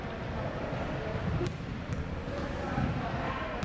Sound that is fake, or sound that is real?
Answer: real